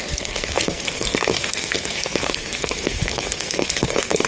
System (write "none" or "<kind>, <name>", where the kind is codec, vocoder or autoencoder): codec, SNAC